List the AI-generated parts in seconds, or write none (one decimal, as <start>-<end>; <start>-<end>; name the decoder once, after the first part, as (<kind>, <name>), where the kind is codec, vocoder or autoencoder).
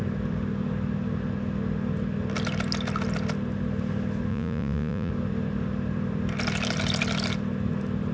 4.3-5.1 (vocoder, Vocos)